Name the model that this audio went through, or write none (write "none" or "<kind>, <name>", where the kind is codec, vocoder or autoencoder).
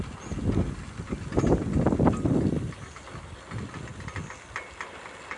none